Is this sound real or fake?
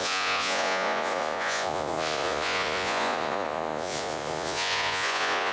fake